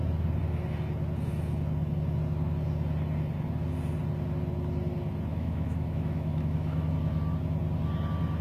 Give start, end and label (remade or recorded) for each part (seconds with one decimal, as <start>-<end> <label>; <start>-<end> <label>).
0.0-5.3 recorded; 5.3-6.9 remade; 6.9-8.4 recorded